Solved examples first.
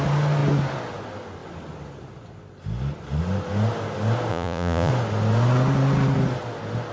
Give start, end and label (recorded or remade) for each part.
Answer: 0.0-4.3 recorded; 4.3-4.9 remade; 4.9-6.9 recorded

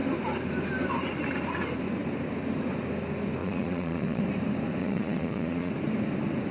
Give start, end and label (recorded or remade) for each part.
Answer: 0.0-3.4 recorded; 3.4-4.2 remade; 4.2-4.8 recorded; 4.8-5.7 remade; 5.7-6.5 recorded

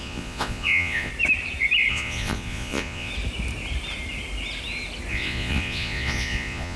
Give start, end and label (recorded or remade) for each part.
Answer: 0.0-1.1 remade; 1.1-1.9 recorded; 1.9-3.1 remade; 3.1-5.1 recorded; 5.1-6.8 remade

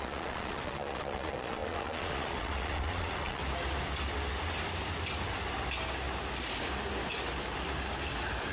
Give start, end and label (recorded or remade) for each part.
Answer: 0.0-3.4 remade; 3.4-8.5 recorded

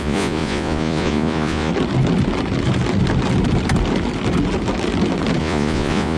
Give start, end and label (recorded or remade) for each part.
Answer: 0.0-1.7 remade; 1.7-5.4 recorded; 5.4-6.2 remade

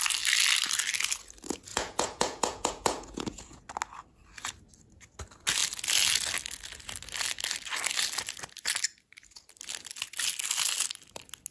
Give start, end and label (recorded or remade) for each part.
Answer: 0.0-1.7 recorded; 1.7-3.6 remade; 3.6-11.5 recorded

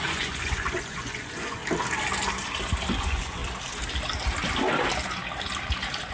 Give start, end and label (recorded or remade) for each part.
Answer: 0.0-1.6 remade; 1.6-3.0 recorded; 3.0-3.4 remade; 3.4-6.1 recorded

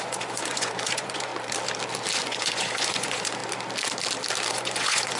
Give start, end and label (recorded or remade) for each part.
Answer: 0.0-1.3 remade; 1.3-2.2 recorded; 2.2-3.4 remade; 3.4-4.5 recorded; 4.5-5.2 remade